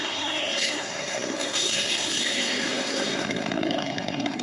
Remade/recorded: remade